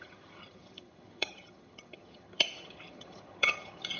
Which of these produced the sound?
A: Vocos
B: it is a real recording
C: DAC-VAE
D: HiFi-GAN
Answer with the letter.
D